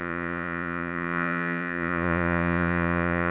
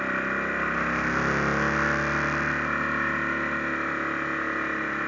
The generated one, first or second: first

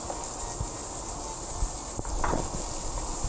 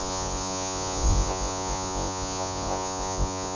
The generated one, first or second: second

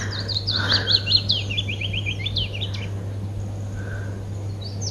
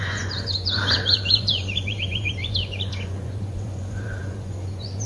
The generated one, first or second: second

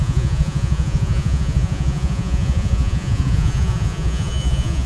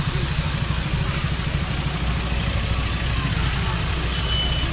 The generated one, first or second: first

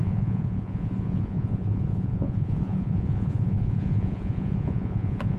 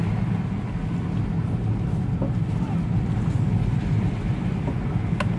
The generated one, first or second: first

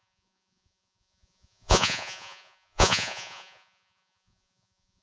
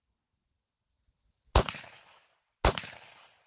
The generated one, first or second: first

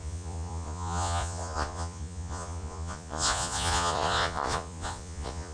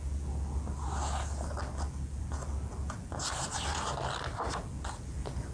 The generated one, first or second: first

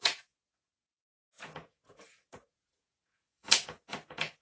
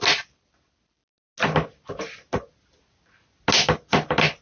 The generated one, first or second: first